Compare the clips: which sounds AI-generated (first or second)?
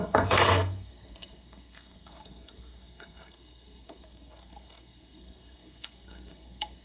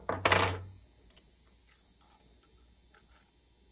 first